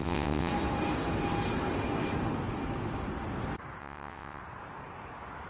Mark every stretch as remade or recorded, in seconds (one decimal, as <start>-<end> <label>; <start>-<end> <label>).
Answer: 0.0-0.5 remade; 0.5-3.8 recorded; 3.8-4.4 remade; 4.4-5.5 recorded